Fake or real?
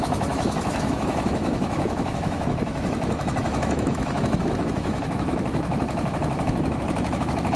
fake